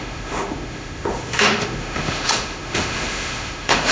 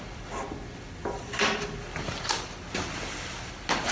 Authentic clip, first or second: second